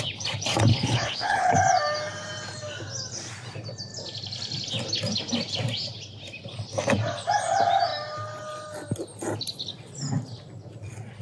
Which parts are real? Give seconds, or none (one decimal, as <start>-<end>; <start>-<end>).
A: 0.0-0.7; 1.5-11.2